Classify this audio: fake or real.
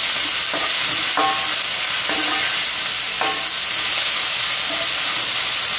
real